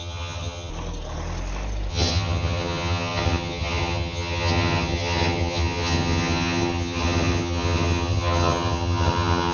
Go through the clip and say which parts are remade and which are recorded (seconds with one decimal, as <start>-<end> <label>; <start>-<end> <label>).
0.0-0.7 remade; 0.7-1.9 recorded; 1.9-9.5 remade